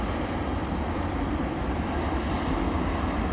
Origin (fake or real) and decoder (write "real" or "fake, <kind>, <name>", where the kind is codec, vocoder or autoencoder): real